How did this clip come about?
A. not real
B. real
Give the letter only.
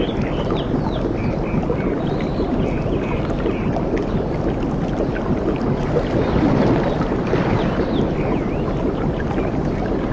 B